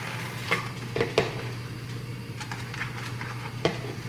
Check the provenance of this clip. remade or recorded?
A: recorded